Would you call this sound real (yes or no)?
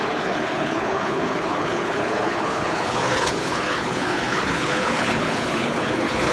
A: no